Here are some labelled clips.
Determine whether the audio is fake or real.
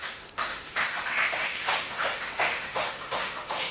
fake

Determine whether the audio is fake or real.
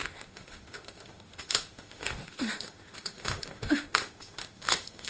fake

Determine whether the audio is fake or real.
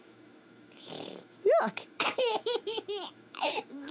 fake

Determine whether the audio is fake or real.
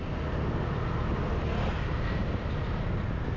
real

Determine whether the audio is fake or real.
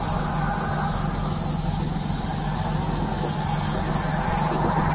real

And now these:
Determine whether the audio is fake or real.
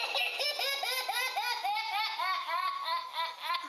real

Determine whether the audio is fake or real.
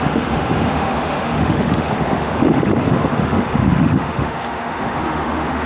fake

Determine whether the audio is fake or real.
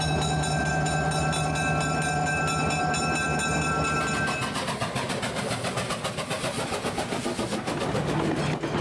real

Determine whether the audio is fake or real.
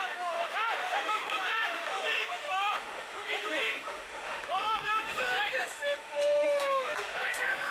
fake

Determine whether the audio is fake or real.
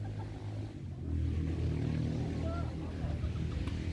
real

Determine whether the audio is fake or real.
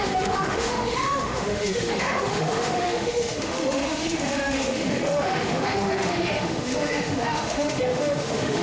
fake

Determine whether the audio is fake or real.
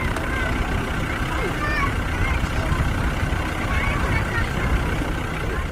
real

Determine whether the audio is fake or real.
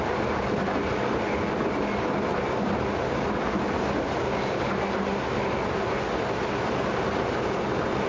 real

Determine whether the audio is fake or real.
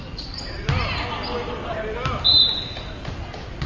real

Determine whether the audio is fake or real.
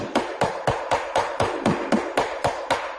real